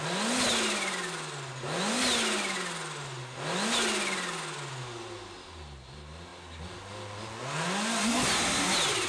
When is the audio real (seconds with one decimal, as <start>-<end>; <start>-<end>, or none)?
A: 0.0-9.1